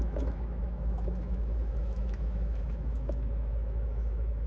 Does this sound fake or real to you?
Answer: fake